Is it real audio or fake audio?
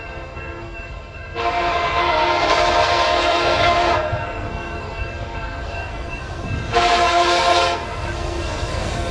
fake